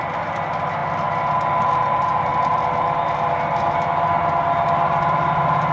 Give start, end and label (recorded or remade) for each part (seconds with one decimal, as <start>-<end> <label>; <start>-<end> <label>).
0.0-5.7 recorded